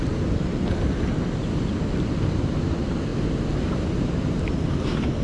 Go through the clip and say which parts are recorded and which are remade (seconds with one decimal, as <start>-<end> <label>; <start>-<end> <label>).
0.0-5.2 recorded